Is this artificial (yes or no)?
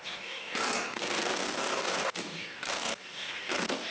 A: yes